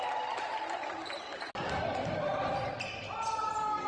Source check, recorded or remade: remade